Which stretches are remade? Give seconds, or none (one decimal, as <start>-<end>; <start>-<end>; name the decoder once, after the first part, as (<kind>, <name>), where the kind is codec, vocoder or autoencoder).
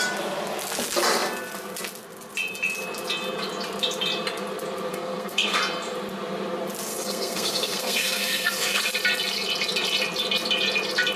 4.9-5.6 (codec, SNAC); 6.9-8.8